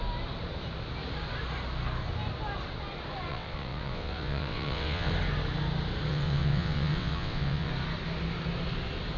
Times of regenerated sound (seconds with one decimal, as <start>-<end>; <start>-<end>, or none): 3.3-5.1; 6.1-7.7